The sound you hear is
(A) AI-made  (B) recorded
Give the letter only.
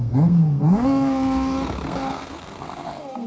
A